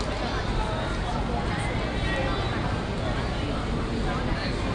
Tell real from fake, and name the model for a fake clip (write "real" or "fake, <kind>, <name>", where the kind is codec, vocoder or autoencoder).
real